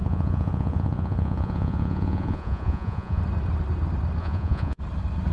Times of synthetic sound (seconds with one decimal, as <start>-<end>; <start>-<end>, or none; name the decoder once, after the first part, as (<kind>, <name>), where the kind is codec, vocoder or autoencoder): 0.0-3.2 (vocoder, Vocos); 4.2-4.8